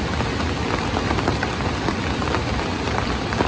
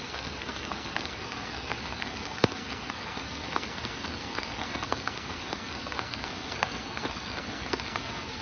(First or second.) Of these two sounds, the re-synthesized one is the second